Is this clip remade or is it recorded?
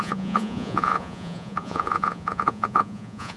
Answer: remade